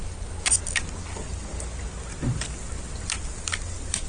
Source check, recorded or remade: recorded